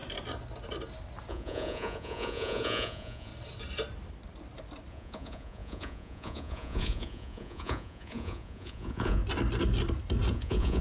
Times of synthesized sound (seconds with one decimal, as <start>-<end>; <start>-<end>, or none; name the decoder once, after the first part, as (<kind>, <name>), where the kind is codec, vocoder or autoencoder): 1.3-3.3 (vocoder, Vocos); 4.9-9.2; 10.3-10.8